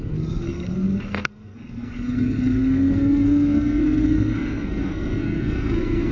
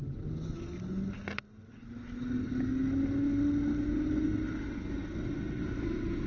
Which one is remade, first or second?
first